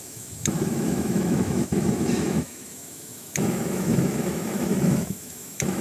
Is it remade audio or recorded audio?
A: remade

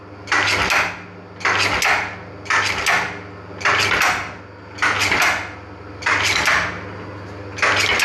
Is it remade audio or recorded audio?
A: recorded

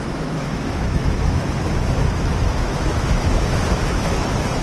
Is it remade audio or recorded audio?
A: remade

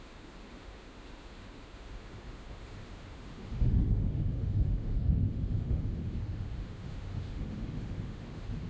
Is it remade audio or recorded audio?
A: remade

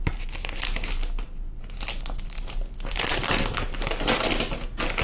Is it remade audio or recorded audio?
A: recorded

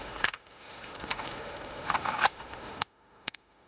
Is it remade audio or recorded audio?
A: remade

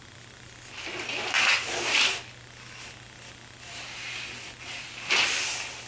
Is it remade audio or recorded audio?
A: recorded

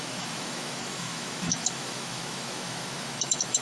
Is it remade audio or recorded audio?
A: remade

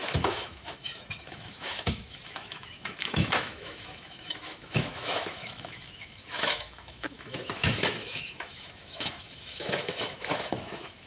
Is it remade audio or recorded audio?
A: remade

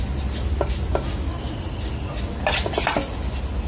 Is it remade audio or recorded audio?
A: recorded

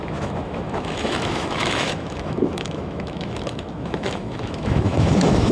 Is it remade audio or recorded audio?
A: remade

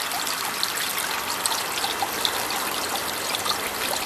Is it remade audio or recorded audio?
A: recorded